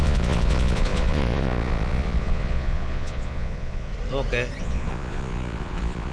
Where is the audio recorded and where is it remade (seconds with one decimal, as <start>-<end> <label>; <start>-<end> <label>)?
0.0-3.9 remade; 3.9-4.6 recorded; 4.6-6.1 remade